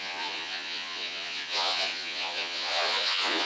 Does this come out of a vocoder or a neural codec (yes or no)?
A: yes